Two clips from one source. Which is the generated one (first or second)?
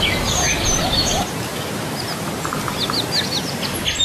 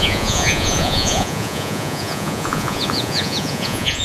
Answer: second